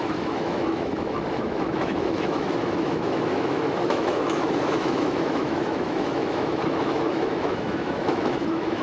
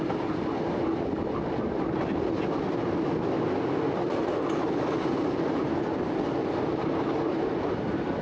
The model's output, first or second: first